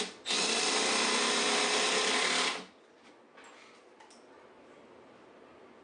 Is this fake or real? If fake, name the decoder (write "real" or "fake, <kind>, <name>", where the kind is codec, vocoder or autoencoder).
real